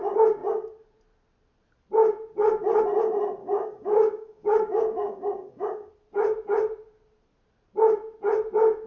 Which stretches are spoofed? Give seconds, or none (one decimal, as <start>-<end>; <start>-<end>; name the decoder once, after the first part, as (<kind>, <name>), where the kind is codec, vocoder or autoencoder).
3.4-5.9 (codec, DAC)